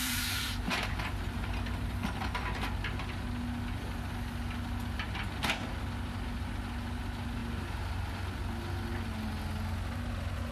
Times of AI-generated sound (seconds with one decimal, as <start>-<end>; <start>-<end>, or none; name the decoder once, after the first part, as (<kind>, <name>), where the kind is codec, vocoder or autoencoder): 0.0-1.5 (vocoder, BigVGAN v2); 7.4-7.9